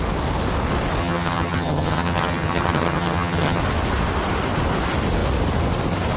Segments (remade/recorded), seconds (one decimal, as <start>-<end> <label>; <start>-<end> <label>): 0.0-1.0 recorded; 1.0-3.6 remade; 3.6-6.2 recorded